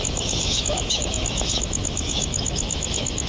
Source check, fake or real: fake